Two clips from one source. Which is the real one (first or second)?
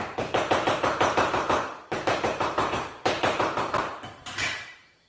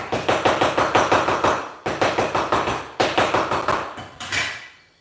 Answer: second